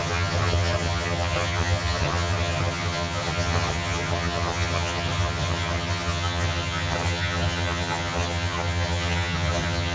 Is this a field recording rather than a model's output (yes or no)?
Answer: no